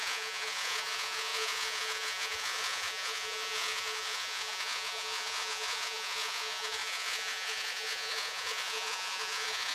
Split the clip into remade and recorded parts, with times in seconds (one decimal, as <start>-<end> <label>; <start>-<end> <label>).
0.0-9.7 remade